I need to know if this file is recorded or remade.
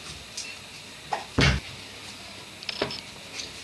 recorded